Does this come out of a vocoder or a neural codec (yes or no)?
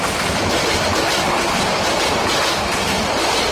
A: no